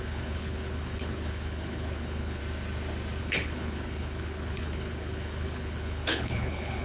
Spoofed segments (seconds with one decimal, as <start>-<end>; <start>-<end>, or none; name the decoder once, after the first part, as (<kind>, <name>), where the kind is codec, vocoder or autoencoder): 0.0-2.4 (codec, HILCodec); 3.2-6.8